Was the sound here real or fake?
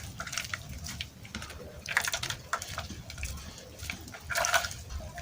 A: real